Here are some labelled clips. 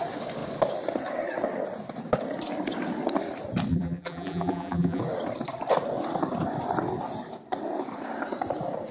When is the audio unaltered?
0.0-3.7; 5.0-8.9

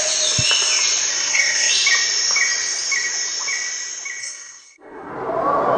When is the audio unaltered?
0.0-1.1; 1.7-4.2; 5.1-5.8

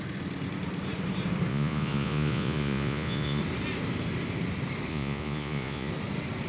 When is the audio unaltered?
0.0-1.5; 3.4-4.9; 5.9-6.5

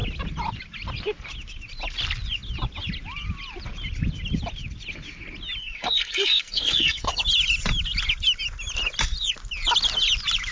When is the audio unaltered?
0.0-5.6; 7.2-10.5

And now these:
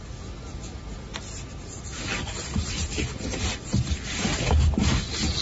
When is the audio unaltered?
0.0-5.4